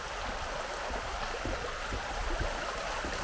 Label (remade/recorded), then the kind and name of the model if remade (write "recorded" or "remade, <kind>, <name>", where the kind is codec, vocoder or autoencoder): recorded